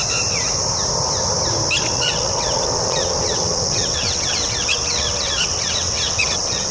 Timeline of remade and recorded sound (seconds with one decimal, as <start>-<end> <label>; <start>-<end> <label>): 0.0-1.8 recorded; 1.8-6.7 remade